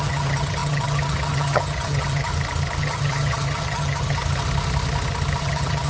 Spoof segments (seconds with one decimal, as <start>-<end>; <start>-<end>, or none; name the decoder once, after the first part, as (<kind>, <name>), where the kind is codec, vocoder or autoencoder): 0.0-2.3 (vocoder, HiFi-GAN); 2.8-4.2; 5.4-5.9